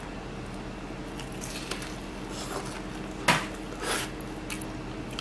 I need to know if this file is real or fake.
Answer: real